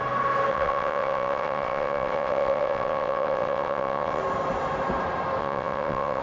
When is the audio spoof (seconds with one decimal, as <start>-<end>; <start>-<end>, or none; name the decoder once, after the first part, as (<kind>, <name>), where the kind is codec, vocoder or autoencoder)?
0.5-4.2 (vocoder, WaveNeXt); 5.4-6.2